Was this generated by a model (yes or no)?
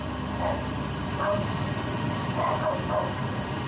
no